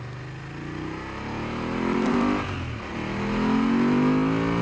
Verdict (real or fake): real